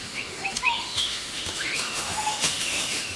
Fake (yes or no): yes